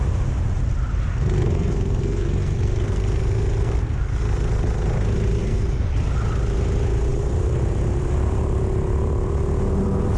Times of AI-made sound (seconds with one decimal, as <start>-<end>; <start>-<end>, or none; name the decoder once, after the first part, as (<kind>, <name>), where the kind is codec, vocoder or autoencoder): 1.1-4.2 (codec, SNAC); 5.4-5.9